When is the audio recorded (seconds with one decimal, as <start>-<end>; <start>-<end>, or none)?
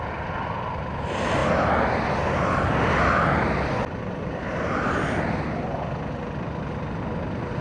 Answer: 0.0-7.6